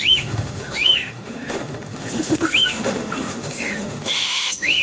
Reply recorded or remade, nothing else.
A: remade